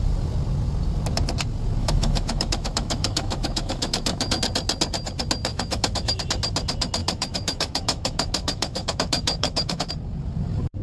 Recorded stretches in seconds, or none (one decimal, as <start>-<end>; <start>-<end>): 0.0-1.8; 4.4-5.5; 6.2-7.0; 9.9-10.8

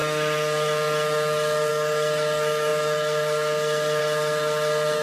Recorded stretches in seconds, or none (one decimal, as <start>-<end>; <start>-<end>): none

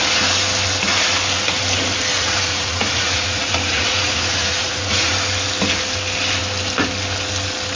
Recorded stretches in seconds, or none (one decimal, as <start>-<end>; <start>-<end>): 0.0-2.1; 5.1-7.8

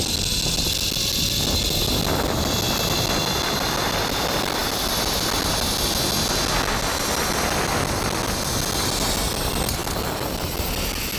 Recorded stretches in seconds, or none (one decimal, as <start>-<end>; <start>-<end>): 0.0-11.2

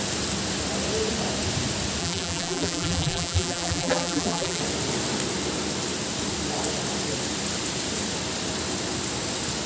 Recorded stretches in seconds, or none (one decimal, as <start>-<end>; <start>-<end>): 0.0-2.0; 4.6-9.7

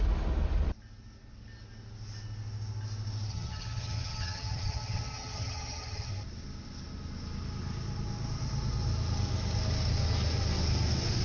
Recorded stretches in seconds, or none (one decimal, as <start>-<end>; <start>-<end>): 0.0-3.3; 6.1-11.2